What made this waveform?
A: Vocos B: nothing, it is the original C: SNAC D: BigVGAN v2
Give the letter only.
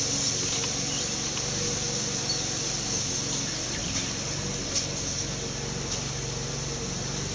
B